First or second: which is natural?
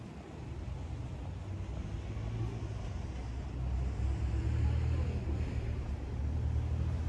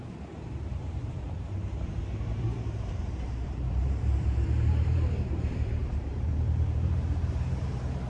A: first